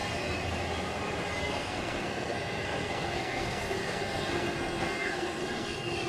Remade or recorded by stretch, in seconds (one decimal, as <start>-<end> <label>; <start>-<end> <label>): 0.0-1.4 recorded; 1.4-6.1 remade